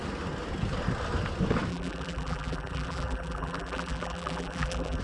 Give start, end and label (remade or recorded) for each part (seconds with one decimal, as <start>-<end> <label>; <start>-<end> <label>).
0.0-1.7 recorded; 1.7-5.0 remade